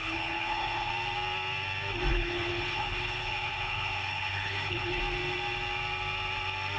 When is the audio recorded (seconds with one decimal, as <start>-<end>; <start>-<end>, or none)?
0.9-2.1; 5.0-6.8